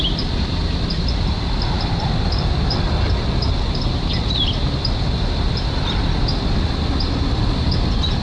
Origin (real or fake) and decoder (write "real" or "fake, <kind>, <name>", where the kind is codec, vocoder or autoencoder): real